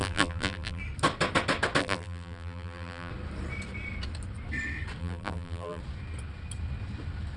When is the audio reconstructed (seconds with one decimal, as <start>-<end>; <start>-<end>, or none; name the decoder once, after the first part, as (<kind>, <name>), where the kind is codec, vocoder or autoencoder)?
0.0-0.8 (vocoder, BigVGAN v2); 1.8-3.1; 5.0-5.8